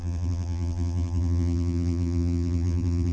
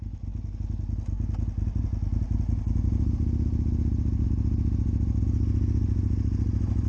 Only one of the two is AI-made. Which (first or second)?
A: first